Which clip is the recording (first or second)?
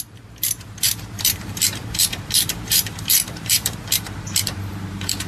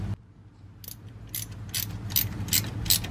second